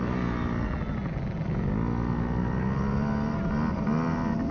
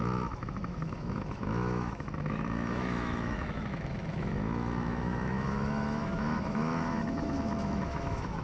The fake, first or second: second